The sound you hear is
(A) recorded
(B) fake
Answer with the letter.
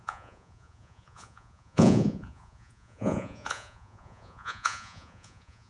B